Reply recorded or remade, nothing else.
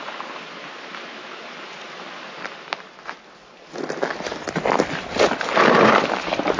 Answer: recorded